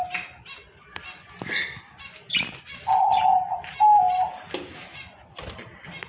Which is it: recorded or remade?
recorded